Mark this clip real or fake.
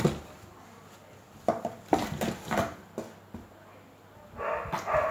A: real